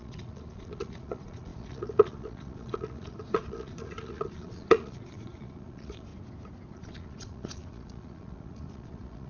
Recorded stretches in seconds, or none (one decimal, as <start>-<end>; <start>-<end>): 6.1-6.7